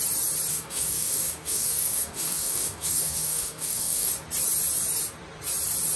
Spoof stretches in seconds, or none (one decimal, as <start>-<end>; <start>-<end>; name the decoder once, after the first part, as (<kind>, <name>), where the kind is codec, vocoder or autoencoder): 0.5-4.1 (codec, DAC)